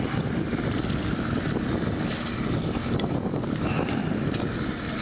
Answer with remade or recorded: recorded